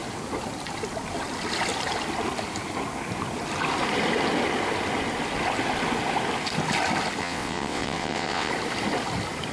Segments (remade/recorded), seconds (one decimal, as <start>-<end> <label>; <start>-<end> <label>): 0.0-7.2 recorded; 7.2-8.5 remade; 8.5-9.5 recorded